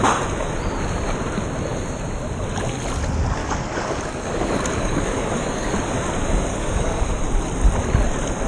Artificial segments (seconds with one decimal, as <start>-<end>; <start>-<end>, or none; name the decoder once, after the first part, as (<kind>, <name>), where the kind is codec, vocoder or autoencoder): 3.4-5.7 (codec, DAC); 6.5-7.0